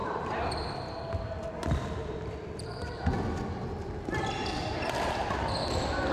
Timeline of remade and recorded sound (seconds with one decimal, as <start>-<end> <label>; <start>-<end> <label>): 0.0-0.6 remade; 0.6-6.1 recorded